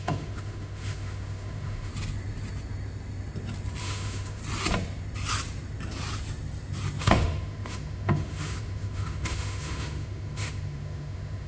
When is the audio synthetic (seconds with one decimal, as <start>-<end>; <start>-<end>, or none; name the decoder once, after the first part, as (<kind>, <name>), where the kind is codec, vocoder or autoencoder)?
0.0-1.9 (autoencoder, DAC-VAE); 3.8-4.4; 7.0-11.5